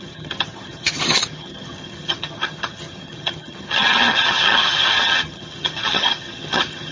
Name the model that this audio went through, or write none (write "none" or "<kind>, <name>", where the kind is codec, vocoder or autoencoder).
vocoder, HiFi-GAN